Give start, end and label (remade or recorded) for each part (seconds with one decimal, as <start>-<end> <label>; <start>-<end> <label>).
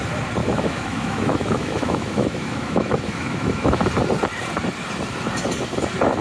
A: 0.0-0.4 recorded; 0.4-3.8 remade; 3.8-6.2 recorded